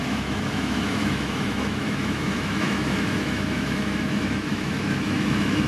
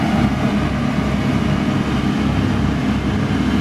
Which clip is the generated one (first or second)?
first